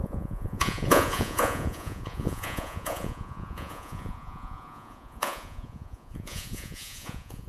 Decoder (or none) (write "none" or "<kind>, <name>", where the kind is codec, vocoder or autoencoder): vocoder, Vocos